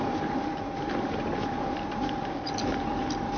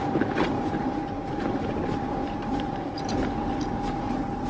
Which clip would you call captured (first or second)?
first